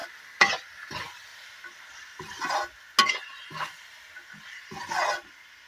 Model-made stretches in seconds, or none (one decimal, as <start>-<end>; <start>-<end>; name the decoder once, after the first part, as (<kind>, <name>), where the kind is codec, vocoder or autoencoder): 0.0-0.5 (vocoder, BigVGAN v2)